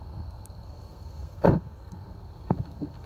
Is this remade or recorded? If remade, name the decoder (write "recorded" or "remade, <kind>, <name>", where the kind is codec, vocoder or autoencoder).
remade, codec, SNAC